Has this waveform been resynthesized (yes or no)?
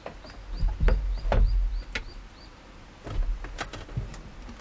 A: no